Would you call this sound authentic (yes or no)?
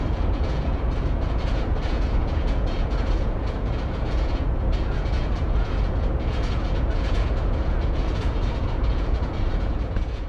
no